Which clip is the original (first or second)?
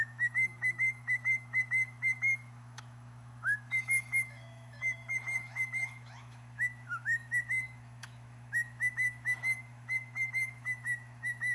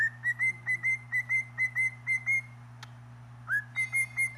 second